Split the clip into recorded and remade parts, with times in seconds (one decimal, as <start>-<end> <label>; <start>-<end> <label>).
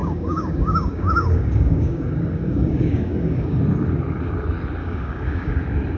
0.0-3.6 remade; 3.6-4.8 recorded; 4.8-5.5 remade; 5.5-6.0 recorded